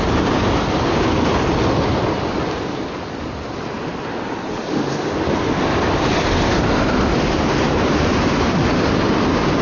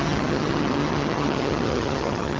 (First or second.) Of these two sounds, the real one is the first